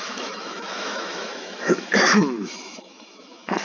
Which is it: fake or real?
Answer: fake